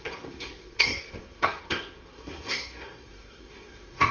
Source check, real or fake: fake